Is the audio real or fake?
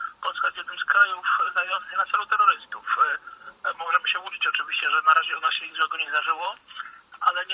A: fake